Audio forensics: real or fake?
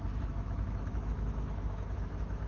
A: fake